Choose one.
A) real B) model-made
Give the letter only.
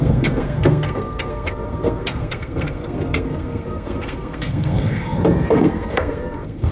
B